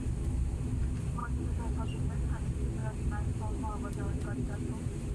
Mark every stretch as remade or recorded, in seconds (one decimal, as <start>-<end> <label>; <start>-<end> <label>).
0.0-2.8 recorded; 2.8-5.1 remade